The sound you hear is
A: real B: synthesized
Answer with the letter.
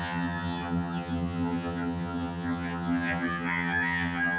B